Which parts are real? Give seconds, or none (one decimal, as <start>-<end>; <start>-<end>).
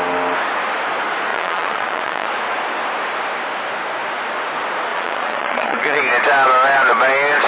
0.0-1.3; 2.3-4.9; 6.0-7.5